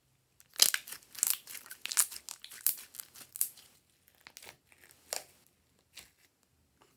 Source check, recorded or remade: recorded